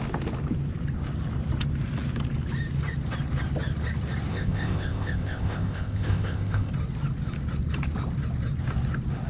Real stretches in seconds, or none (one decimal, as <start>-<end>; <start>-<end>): 0.0-4.3; 6.7-9.3